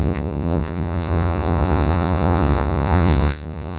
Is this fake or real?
fake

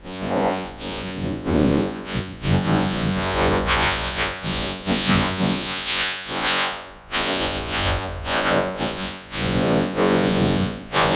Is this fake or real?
fake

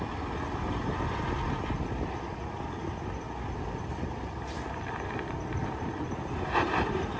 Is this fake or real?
real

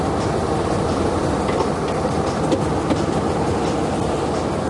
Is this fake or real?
real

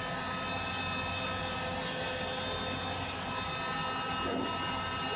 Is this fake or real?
real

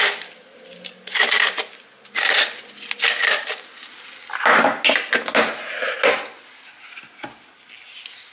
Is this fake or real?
real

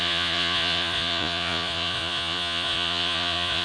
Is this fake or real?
fake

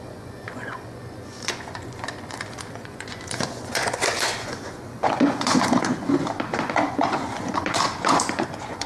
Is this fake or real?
fake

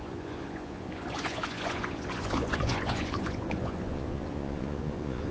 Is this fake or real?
fake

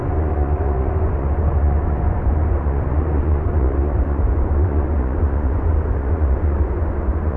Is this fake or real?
fake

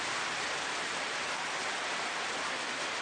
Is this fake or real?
real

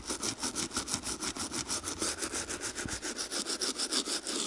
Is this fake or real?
real